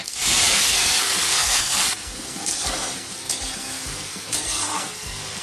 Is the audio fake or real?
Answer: fake